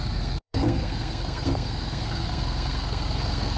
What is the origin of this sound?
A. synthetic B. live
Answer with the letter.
A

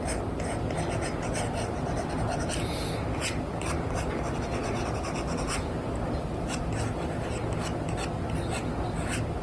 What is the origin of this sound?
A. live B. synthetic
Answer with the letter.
A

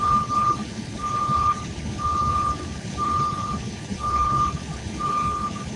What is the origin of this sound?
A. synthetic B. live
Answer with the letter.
A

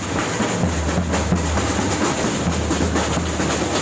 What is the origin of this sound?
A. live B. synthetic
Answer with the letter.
A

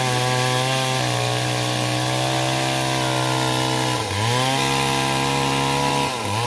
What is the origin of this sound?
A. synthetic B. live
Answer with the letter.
B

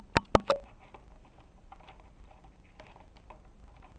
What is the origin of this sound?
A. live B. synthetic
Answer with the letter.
A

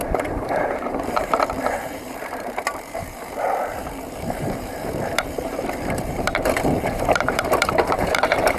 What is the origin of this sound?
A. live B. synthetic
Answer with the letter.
B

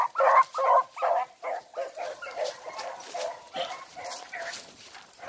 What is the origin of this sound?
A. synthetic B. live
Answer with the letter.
B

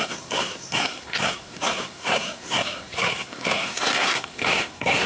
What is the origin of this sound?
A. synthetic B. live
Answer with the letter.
A